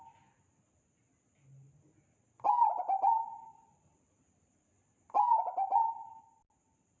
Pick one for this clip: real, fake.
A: real